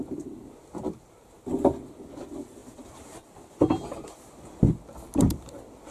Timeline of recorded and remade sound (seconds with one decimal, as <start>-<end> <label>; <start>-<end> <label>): 0.0-5.9 recorded